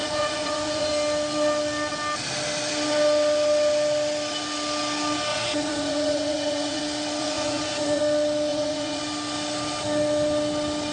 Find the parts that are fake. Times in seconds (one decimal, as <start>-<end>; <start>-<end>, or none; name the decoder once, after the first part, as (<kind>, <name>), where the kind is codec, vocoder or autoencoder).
0.0-0.9 (vocoder, Vocos); 5.3-6.8; 7.2-8.0; 8.5-9.0